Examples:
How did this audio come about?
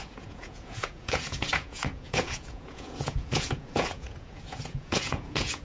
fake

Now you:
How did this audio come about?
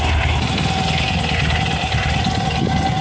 real